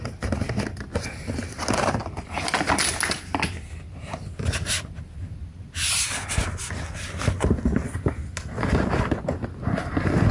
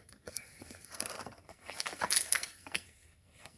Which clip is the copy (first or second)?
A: second